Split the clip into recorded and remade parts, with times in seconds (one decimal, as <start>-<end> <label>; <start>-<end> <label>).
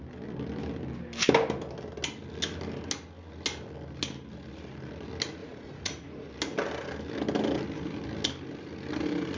0.0-5.4 recorded; 5.4-6.3 remade; 6.3-9.4 recorded